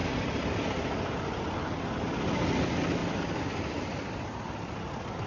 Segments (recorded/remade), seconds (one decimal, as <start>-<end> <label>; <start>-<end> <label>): 0.0-5.3 recorded